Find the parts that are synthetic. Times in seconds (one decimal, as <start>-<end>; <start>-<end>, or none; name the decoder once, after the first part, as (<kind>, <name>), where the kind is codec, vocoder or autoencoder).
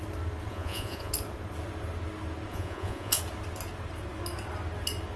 0.5-1.1 (vocoder, Vocos); 2.5-3.2